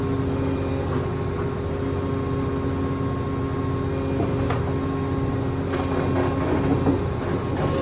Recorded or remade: recorded